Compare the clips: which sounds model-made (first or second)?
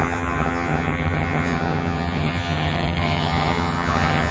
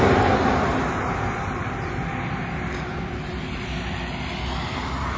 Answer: first